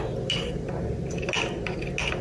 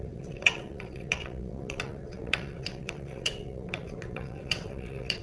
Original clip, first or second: first